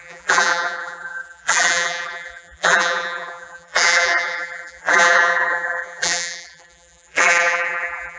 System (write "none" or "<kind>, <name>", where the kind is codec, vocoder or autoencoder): vocoder, BigVGAN v2